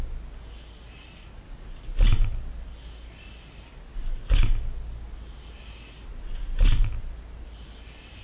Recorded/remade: recorded